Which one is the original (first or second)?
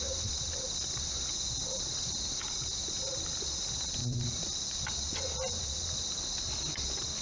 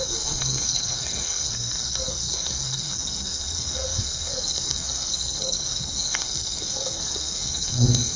first